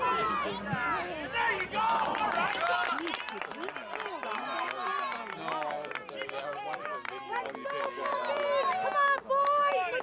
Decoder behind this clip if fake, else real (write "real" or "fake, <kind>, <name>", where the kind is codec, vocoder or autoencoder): real